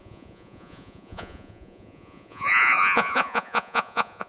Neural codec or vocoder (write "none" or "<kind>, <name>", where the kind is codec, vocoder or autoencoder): vocoder, Vocos